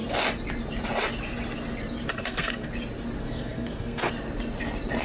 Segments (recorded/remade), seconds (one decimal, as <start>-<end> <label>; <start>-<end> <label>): 0.0-2.1 recorded; 2.1-2.7 remade; 2.7-3.2 recorded; 3.2-4.1 remade; 4.1-5.0 recorded